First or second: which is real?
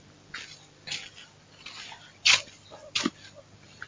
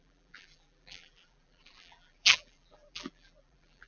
first